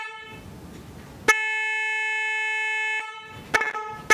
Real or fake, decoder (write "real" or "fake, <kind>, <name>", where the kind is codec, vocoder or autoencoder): real